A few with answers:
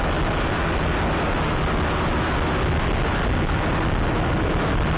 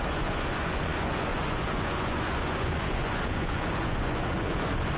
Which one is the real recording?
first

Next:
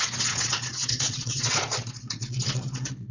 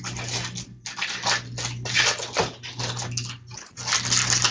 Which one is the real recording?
second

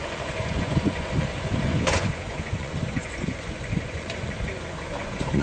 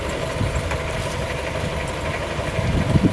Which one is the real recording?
second